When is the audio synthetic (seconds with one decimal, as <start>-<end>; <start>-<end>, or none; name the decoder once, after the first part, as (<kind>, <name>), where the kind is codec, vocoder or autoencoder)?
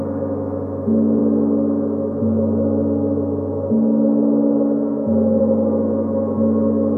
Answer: none